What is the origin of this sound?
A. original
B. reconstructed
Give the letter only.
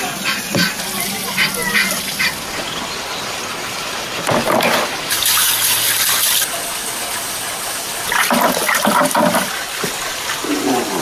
A